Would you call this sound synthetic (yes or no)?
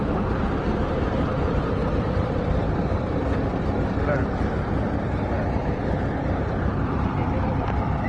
yes